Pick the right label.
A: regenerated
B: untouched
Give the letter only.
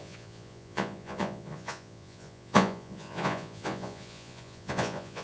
A